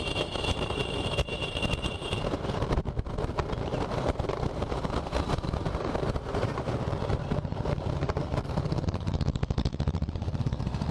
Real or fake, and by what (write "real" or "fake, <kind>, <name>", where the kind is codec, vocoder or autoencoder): fake, vocoder, BigVGAN v2